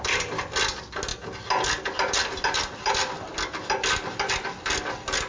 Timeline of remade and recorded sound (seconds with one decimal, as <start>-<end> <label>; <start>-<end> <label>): 0.0-5.3 recorded